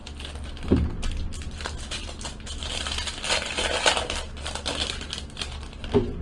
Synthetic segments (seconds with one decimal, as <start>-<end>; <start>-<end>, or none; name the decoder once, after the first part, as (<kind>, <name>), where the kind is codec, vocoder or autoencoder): none